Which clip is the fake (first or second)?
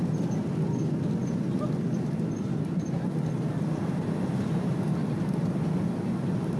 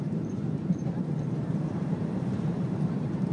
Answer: second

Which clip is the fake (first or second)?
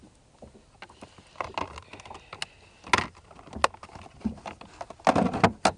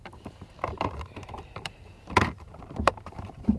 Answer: second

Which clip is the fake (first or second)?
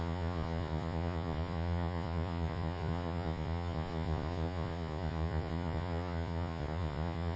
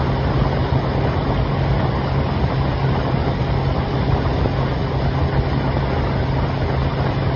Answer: first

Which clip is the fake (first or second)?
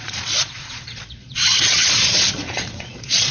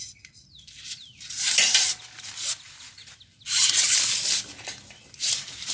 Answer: first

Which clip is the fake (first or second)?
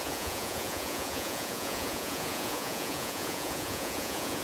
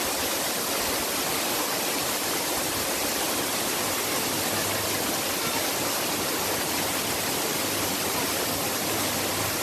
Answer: first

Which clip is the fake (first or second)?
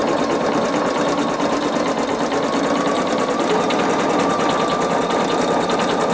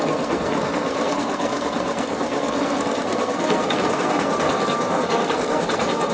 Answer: second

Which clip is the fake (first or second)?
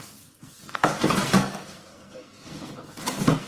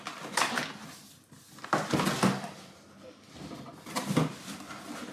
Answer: first